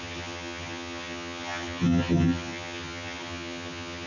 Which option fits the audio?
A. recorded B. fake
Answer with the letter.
B